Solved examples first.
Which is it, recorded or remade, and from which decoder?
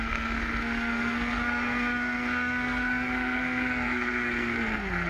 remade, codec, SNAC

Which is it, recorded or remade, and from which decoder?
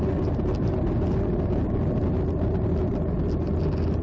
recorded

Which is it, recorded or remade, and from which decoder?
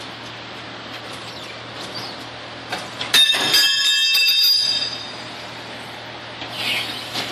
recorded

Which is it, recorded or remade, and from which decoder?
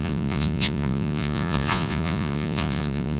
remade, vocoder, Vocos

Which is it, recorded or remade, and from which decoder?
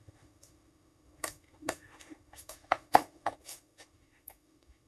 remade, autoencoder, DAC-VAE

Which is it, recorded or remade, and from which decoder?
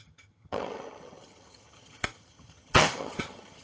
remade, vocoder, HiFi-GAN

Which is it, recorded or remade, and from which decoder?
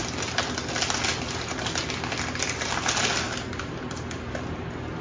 recorded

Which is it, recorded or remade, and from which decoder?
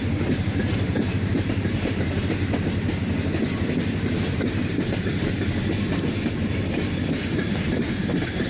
remade, vocoder, BigVGAN v2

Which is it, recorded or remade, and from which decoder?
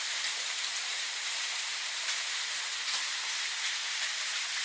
recorded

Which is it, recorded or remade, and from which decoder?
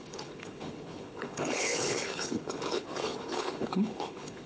remade, codec, HILCodec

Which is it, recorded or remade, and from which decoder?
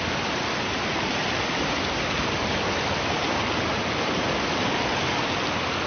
recorded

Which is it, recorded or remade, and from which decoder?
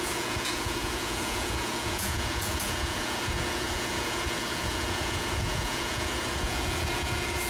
remade, vocoder, Vocos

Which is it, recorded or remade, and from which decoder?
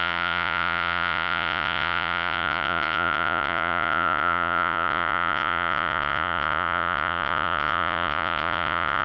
remade, vocoder, Vocos